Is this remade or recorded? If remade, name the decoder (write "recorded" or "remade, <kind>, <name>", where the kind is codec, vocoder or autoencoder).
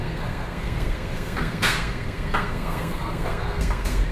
remade, codec, SNAC